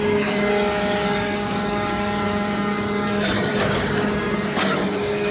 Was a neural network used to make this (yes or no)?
yes